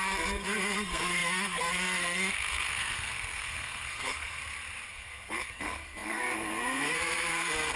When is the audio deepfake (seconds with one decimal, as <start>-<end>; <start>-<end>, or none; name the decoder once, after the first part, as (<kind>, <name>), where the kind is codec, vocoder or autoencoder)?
0.0-4.4 (codec, SNAC); 4.9-7.8